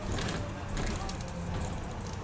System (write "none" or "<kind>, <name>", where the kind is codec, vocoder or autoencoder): none